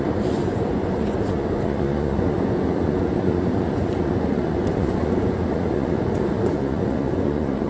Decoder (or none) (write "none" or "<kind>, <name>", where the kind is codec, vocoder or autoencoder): vocoder, Vocos